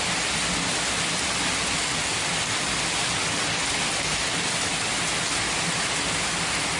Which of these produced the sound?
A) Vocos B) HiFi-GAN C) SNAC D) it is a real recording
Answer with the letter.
D